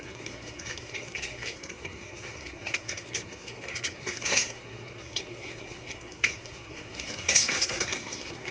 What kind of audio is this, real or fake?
fake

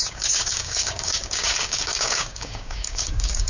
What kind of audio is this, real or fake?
fake